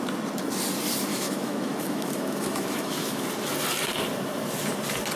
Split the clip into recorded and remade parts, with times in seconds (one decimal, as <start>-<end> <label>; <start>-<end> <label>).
0.0-1.1 recorded; 1.1-3.2 remade; 3.2-5.2 recorded